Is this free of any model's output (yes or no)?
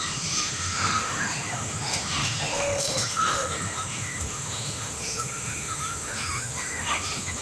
no